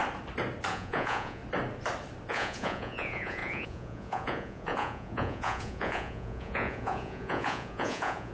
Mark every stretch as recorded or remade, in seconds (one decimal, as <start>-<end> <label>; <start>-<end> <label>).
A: 0.0-0.7 recorded; 0.7-1.4 remade; 1.4-2.3 recorded; 2.3-8.3 remade